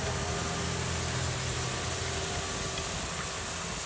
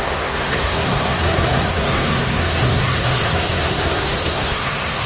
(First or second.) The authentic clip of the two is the first